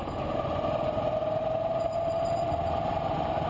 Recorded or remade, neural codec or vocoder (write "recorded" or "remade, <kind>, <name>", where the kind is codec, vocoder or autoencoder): recorded